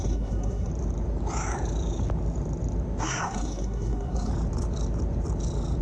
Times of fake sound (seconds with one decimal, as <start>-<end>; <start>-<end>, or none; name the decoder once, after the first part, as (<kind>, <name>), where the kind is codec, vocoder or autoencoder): 0.0-0.7 (codec, SNAC); 3.0-4.3